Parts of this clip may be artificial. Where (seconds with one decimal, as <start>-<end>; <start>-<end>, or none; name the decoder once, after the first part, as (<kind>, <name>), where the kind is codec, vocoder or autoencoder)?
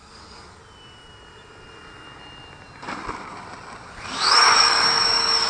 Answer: 0.0-0.6 (codec, DAC); 3.9-5.5